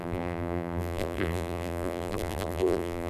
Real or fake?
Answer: fake